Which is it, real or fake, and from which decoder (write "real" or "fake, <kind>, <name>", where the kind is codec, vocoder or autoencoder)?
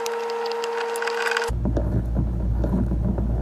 real